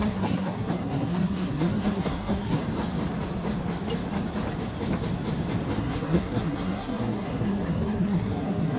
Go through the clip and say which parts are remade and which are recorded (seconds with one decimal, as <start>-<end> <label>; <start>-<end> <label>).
0.0-2.6 remade; 2.6-5.7 recorded; 5.7-8.8 remade